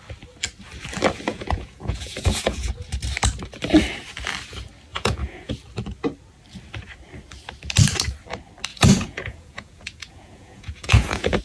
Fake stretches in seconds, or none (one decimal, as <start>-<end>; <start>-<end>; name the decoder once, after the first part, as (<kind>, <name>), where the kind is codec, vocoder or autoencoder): 1.3-2.7 (vocoder, Vocos); 4.9-5.5; 8.7-11.4